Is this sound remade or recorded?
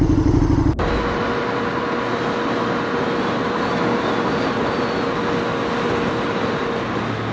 recorded